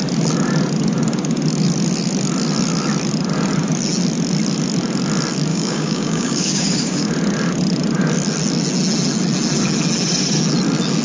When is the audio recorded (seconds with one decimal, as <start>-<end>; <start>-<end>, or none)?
0.0-5.5; 7.1-11.0